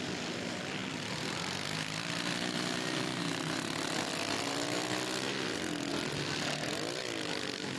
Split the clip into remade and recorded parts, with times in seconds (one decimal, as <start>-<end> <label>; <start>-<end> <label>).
0.0-0.8 recorded; 0.8-3.2 remade; 3.2-7.8 recorded